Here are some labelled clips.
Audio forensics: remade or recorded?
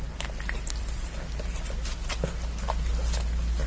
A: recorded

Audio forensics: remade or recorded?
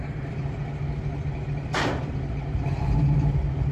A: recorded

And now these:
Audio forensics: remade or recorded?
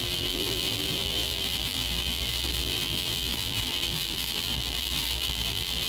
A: remade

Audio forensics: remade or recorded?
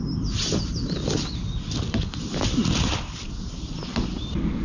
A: recorded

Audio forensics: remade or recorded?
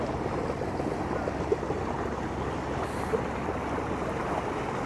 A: recorded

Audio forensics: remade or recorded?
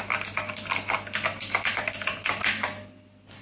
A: recorded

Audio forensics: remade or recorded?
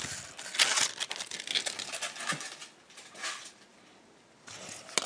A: recorded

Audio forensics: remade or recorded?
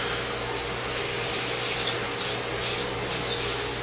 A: recorded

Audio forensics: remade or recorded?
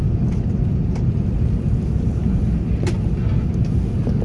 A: recorded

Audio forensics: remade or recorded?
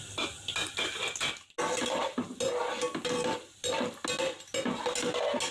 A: recorded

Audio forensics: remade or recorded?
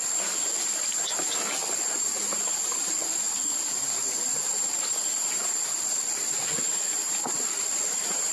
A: recorded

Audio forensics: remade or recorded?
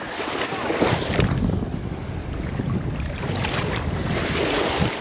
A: recorded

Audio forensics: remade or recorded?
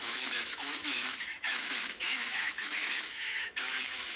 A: remade